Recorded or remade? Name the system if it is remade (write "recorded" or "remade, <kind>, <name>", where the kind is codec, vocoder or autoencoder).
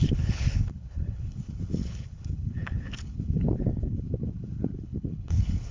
remade, codec, HILCodec